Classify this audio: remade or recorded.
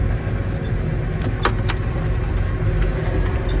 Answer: recorded